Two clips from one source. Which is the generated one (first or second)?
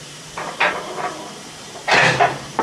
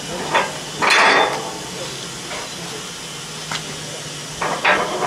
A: first